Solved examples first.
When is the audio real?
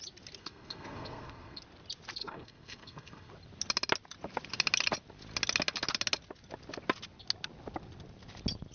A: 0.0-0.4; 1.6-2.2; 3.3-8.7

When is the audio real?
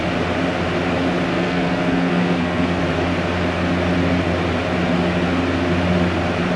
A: 0.0-1.3; 2.8-6.6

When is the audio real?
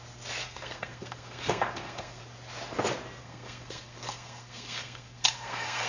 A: 0.0-0.4; 2.2-3.2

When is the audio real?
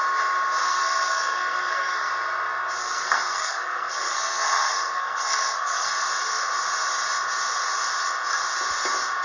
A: 0.0-0.6; 2.1-2.8; 5.9-9.2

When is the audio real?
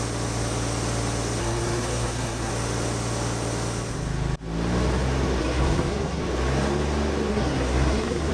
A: 0.0-1.4; 2.5-5.4; 6.2-7.3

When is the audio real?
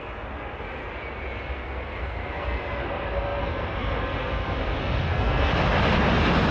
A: 0.8-1.4; 5.5-6.5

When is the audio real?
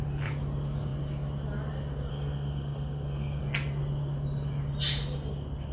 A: 0.0-2.1; 3.4-5.7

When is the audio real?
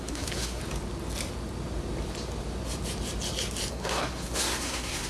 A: 0.6-3.7